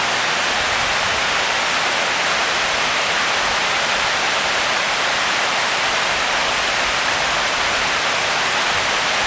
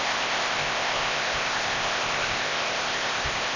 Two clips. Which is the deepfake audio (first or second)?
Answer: second